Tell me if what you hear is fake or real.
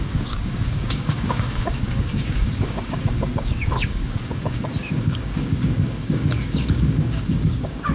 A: fake